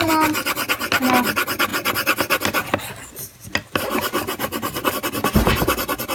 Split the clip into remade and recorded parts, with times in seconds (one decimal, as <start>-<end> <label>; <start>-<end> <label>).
0.0-6.1 recorded